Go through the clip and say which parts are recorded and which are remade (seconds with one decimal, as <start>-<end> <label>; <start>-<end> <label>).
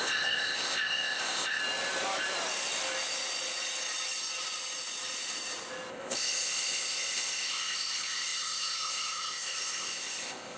0.0-1.6 remade; 1.6-5.9 recorded; 5.9-10.6 remade